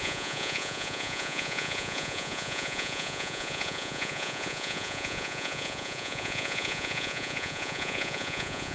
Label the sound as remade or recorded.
remade